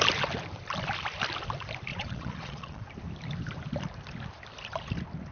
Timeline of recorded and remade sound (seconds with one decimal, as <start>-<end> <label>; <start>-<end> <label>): 0.0-1.9 recorded; 1.9-2.9 remade; 2.9-5.3 recorded